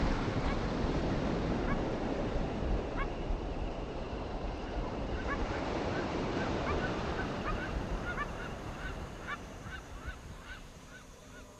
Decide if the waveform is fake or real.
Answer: fake